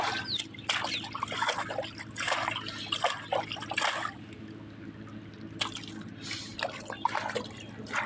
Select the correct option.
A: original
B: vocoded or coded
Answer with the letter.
A